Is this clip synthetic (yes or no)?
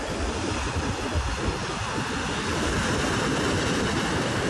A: yes